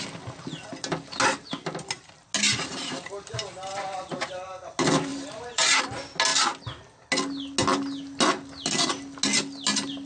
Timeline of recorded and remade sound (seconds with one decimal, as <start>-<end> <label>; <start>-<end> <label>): 0.0-2.5 recorded; 2.5-4.3 remade; 4.3-5.1 recorded; 5.1-5.8 remade; 5.8-10.1 recorded